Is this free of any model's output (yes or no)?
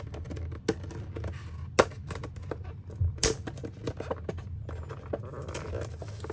yes